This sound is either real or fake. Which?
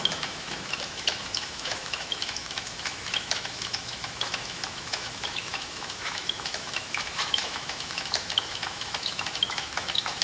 fake